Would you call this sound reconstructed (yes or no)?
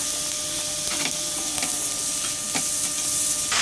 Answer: no